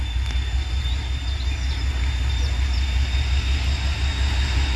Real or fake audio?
real